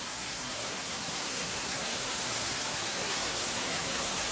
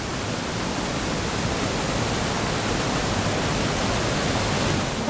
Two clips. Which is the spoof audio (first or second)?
first